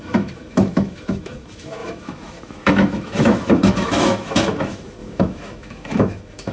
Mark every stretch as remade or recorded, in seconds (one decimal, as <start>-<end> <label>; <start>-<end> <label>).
0.0-6.5 remade